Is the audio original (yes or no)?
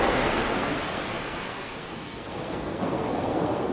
no